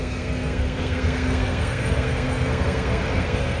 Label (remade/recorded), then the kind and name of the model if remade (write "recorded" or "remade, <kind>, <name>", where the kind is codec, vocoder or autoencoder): remade, codec, SNAC